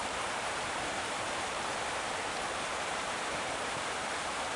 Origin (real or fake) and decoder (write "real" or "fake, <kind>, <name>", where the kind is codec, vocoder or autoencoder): fake, vocoder, BigVGAN v2